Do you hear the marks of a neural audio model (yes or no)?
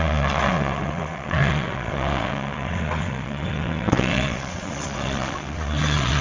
yes